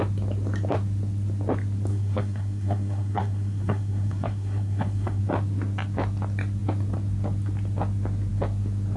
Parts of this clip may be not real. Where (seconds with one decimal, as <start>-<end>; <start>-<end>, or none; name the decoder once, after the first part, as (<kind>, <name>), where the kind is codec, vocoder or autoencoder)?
1.9-5.2 (codec, SNAC)